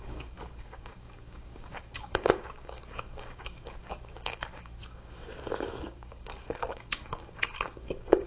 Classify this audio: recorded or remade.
remade